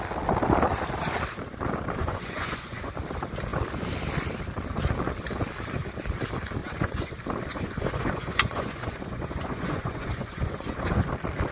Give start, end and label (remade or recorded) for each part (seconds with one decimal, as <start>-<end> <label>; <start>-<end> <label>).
0.0-2.0 recorded; 2.0-2.9 remade; 2.9-6.6 recorded; 6.6-7.1 remade; 7.1-7.5 recorded; 7.5-11.1 remade; 11.1-11.5 recorded